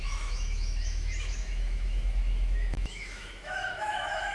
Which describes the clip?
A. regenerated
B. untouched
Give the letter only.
A